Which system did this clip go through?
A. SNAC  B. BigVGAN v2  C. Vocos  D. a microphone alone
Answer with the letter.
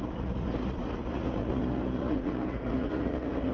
C